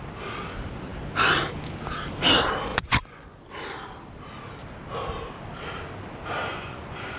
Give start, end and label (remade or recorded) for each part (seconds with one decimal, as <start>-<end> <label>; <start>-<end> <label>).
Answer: 0.0-2.7 recorded; 2.7-3.4 remade; 3.4-6.5 recorded; 6.5-7.2 remade